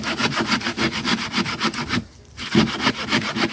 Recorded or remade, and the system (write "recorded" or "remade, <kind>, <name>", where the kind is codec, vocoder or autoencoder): recorded